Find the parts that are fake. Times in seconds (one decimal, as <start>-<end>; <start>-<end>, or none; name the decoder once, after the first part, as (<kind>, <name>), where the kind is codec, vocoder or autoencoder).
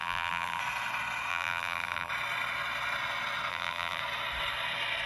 0.0-0.6 (vocoder, BigVGAN v2); 1.3-2.1; 3.5-4.0